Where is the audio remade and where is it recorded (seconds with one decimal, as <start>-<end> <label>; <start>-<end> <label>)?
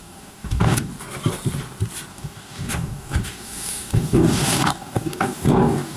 0.0-0.9 remade; 0.9-2.1 recorded; 2.1-6.0 remade